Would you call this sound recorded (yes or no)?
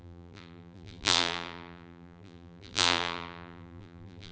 no